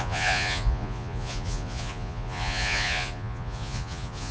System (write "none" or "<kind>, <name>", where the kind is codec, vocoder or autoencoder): vocoder, Vocos